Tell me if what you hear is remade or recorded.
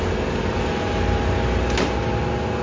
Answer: recorded